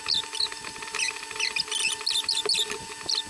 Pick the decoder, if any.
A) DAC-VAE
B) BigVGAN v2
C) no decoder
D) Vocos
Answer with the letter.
C